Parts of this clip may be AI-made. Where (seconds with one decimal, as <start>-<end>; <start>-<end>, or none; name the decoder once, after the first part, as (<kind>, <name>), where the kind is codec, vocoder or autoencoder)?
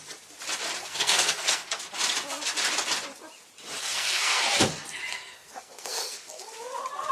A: 0.8-1.8 (codec, SNAC); 3.8-4.4; 5.1-6.6